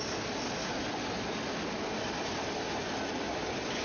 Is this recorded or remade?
recorded